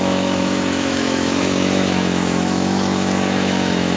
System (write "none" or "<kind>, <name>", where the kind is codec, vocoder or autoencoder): autoencoder, DAC-VAE